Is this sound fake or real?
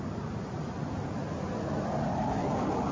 real